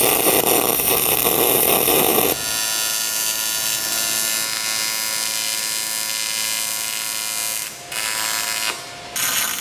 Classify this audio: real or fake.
real